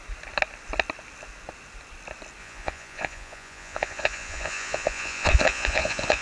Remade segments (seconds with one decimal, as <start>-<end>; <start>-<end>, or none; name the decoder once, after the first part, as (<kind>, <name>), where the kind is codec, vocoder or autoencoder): 2.4-6.2 (vocoder, Vocos)